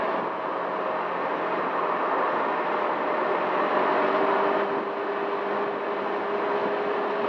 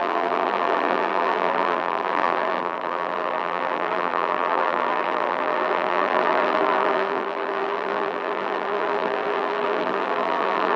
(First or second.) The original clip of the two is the first